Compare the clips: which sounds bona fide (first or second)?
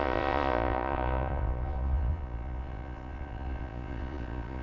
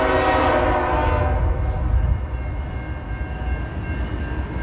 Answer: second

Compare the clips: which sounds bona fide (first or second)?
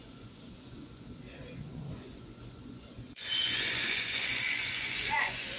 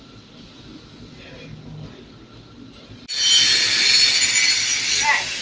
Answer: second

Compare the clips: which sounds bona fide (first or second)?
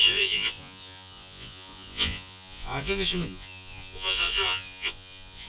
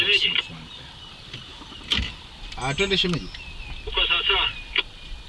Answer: second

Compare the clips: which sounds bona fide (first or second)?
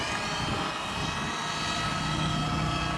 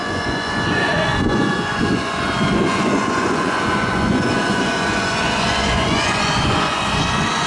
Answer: first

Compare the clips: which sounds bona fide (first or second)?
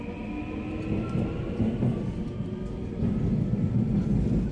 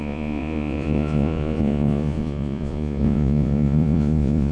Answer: first